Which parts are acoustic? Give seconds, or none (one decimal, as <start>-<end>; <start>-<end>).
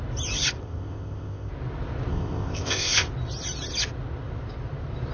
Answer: 0.0-0.6; 1.5-2.1; 3.1-5.1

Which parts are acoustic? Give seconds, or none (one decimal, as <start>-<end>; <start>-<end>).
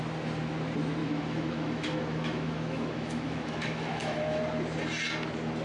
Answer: 0.0-1.0; 4.4-5.6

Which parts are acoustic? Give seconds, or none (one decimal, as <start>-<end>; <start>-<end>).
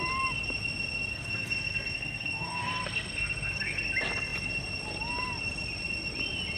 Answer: 0.0-1.1; 3.8-6.6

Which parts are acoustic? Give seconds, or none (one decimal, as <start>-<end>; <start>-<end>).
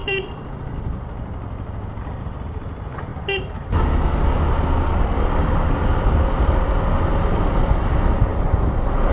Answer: 0.6-3.1; 3.7-8.3